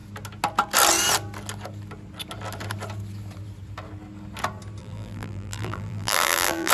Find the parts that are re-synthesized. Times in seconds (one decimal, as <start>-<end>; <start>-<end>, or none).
4.8-6.7